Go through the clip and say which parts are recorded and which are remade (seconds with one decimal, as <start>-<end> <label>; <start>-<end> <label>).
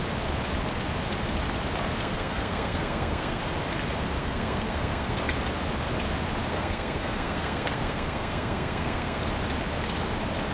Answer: 0.0-2.0 recorded; 2.0-3.4 remade; 3.4-4.2 recorded; 4.2-5.2 remade; 5.2-6.5 recorded; 6.5-9.2 remade; 9.2-10.5 recorded